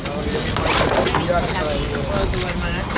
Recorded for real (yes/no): yes